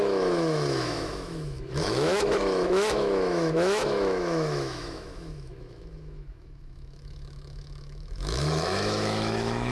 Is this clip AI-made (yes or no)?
yes